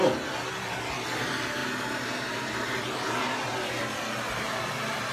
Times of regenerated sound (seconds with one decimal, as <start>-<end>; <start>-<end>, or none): none